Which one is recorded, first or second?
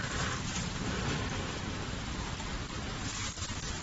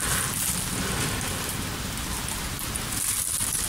second